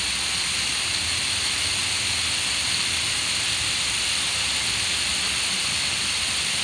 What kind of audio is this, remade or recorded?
recorded